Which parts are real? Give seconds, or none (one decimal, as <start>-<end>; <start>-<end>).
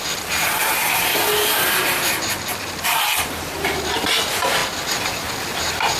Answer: 0.0-3.1; 4.1-6.0